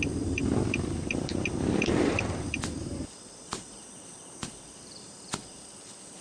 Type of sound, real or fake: fake